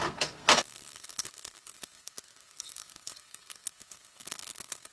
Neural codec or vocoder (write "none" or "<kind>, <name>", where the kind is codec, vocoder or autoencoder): codec, SNAC